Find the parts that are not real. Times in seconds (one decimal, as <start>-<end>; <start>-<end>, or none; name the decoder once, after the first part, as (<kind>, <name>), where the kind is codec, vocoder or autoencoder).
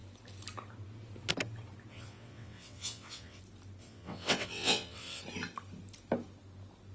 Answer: 1.9-3.4 (vocoder, WaveNeXt); 3.8-5.2